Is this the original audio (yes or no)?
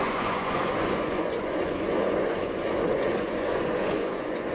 no